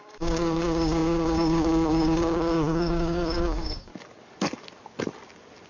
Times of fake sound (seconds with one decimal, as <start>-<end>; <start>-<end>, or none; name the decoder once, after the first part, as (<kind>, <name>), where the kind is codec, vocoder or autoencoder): 0.0-3.9 (codec, DAC)